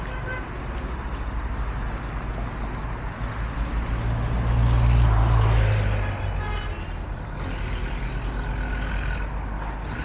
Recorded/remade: recorded